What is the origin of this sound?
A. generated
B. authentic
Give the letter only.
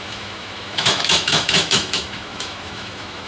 A